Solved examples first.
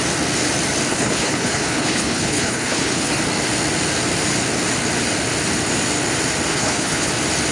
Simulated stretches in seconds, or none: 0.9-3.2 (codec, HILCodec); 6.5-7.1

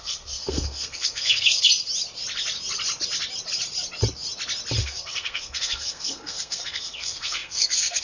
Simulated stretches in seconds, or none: 0.0-1.7 (codec, SNAC); 4.8-8.0